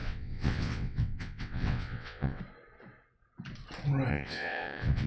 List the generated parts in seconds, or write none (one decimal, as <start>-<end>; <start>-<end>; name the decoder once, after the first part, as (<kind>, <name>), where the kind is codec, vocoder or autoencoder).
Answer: 0.0-2.4 (vocoder, WaveNeXt); 4.1-5.1